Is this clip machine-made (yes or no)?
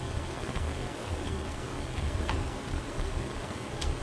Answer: yes